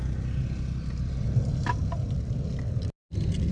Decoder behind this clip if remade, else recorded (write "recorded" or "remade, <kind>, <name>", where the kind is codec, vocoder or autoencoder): recorded